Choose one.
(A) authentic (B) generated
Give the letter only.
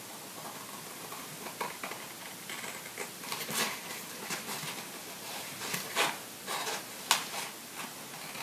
A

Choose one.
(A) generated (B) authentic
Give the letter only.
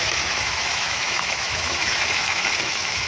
A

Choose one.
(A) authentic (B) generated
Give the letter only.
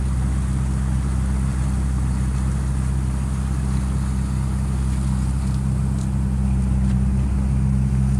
A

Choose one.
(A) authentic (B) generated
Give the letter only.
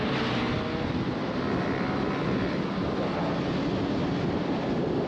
A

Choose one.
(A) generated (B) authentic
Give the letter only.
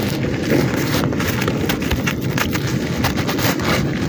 B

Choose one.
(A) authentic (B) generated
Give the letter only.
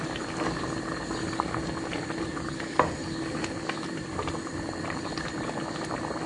A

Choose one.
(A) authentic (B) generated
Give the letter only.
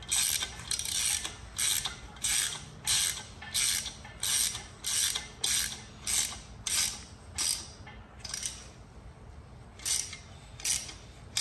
A